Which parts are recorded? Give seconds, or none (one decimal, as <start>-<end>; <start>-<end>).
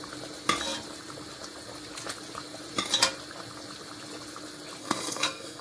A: 0.0-4.8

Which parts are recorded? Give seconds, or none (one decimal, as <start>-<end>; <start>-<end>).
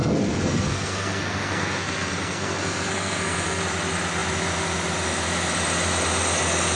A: 3.6-6.8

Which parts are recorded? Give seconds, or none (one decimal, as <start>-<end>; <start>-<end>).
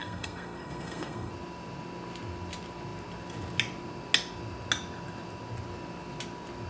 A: 1.3-6.7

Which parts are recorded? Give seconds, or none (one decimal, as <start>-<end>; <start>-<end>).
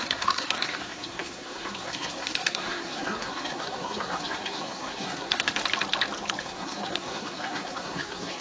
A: 5.6-6.4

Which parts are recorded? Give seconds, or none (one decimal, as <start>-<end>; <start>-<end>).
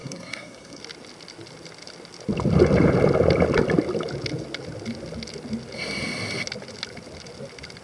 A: 0.8-7.8